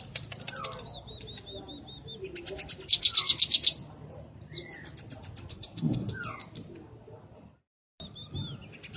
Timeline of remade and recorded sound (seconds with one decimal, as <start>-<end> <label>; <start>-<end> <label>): 0.0-5.5 recorded; 5.5-6.1 remade; 6.1-9.0 recorded